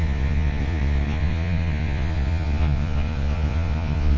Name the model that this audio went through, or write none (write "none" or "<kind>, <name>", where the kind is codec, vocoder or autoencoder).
vocoder, Vocos